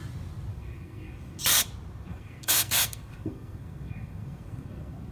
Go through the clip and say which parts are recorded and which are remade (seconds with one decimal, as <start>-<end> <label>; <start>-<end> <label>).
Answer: 0.0-0.5 recorded; 0.5-1.4 remade; 1.4-2.1 recorded; 2.1-5.1 remade